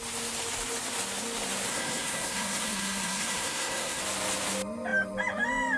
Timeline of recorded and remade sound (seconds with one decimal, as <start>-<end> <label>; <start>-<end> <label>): 0.0-1.7 recorded; 1.7-4.0 remade; 4.0-5.8 recorded